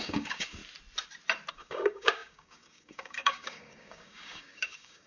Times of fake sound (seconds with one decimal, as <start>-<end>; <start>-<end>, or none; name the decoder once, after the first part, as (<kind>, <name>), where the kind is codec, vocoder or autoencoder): 0.0-0.6 (codec, DAC); 1.5-5.1